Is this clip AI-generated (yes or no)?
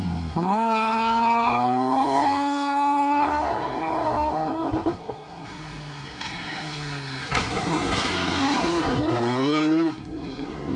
yes